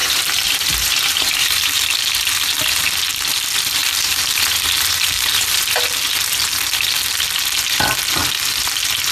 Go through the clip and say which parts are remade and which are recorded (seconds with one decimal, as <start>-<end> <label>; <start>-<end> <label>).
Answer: 0.0-1.9 remade; 1.9-3.8 recorded; 3.8-5.6 remade; 5.6-9.1 recorded